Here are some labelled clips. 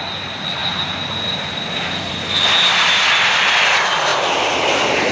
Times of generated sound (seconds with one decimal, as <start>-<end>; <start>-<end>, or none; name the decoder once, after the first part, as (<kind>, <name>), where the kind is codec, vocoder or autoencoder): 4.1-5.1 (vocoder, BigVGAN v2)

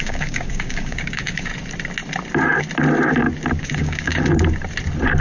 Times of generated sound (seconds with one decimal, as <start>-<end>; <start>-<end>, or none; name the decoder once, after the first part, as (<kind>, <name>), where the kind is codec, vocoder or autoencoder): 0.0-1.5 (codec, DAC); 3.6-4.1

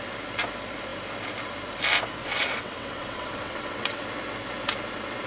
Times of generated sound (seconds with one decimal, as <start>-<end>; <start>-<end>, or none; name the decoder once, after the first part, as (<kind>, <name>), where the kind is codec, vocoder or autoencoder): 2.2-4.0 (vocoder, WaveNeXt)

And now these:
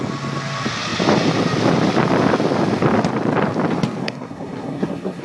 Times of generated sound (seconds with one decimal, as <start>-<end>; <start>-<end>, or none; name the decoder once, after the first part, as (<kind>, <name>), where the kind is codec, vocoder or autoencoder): 4.0-5.2 (codec, SNAC)

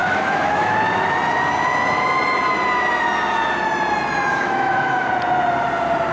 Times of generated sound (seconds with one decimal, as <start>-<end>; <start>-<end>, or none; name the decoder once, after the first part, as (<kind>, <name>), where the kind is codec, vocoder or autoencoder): 0.0-0.7 (autoencoder, DAC-VAE); 4.3-5.1

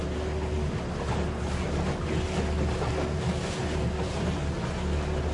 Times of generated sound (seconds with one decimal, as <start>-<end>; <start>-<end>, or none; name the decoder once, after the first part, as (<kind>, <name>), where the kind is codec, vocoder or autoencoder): none